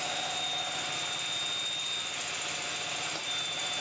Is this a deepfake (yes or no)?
no